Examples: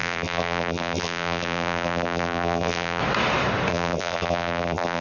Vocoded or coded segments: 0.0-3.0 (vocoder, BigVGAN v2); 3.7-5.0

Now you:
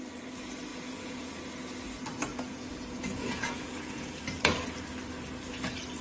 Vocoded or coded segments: 0.7-1.3 (vocoder, Vocos); 2.3-4.2

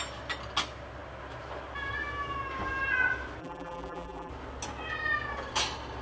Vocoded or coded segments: 3.4-4.3 (vocoder, BigVGAN v2)

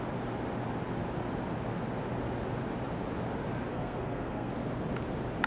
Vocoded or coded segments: 3.7-4.5 (codec, SNAC)

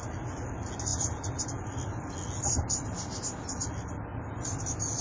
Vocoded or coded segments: none